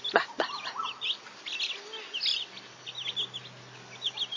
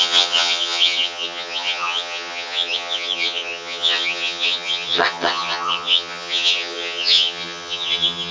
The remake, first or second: second